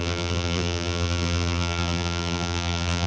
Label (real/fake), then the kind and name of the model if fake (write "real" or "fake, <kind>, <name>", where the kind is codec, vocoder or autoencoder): fake, vocoder, BigVGAN v2